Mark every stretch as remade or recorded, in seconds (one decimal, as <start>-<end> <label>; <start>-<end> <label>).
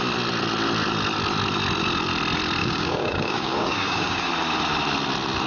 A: 0.0-2.6 recorded; 2.6-4.3 remade; 4.3-5.5 recorded